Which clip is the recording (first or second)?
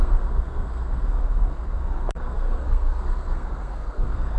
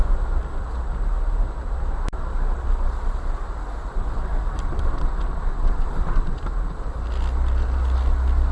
second